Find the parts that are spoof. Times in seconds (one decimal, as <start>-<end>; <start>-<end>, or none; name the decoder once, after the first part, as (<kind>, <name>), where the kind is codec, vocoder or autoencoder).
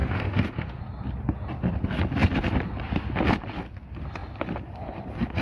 0.0-0.8 (autoencoder, DAC-VAE)